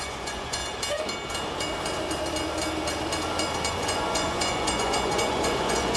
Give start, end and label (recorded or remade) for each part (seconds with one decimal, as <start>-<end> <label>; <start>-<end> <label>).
0.0-0.6 remade; 0.6-3.7 recorded; 3.7-6.0 remade